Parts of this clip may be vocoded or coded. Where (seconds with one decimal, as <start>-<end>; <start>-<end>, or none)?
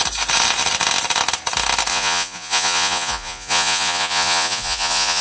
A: 1.9-5.2